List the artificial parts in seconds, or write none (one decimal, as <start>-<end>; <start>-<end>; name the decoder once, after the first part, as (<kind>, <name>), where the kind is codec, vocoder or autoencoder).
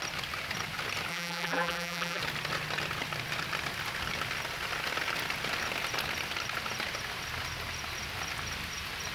1.1-2.2 (vocoder, BigVGAN v2)